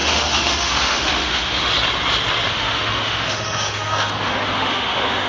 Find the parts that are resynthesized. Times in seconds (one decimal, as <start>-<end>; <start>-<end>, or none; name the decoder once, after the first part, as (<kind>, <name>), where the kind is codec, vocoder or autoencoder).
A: 0.0-1.7 (autoencoder, DAC-VAE); 2.5-5.3

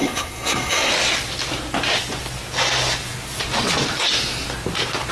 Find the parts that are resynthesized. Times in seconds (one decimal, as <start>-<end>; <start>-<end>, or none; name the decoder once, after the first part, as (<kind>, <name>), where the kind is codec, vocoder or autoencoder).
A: 0.0-0.9 (codec, SNAC)

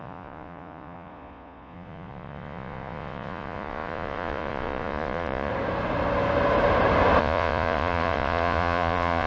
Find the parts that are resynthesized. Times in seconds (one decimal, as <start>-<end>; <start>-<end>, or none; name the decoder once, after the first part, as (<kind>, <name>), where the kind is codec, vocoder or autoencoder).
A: 0.0-5.5 (vocoder, Vocos); 7.2-9.3

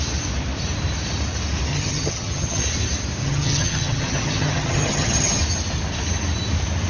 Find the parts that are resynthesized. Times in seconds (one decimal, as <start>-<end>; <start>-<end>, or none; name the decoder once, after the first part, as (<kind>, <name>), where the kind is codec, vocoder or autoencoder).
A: 1.7-2.6 (vocoder, HiFi-GAN); 3.2-5.4

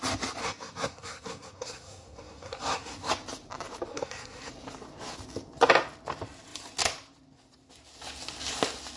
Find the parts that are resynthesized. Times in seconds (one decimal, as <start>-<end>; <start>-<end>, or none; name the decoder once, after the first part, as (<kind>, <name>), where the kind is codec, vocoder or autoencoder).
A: 0.4-3.1 (codec, SNAC); 3.9-4.5

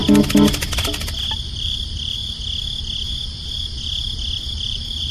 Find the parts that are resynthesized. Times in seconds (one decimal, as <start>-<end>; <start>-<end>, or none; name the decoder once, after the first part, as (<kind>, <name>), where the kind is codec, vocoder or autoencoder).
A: 1.5-2.2 (vocoder, BigVGAN v2); 4.5-5.1